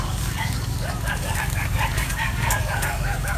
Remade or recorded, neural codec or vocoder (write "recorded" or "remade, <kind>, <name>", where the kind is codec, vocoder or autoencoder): remade, codec, DAC